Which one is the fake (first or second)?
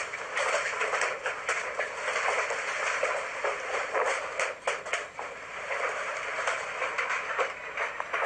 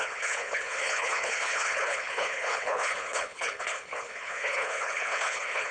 second